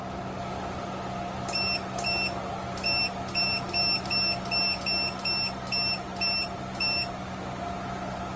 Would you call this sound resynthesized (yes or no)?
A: no